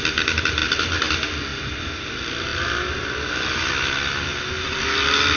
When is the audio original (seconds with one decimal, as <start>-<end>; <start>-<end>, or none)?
0.0-5.4